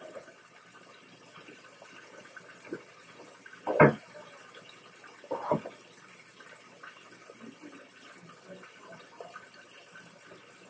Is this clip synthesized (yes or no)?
no